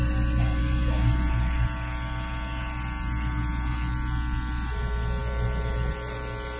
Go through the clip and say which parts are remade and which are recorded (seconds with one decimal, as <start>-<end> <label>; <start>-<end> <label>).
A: 0.0-6.6 recorded